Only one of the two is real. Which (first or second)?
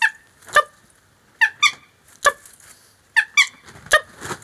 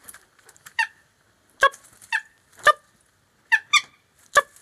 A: first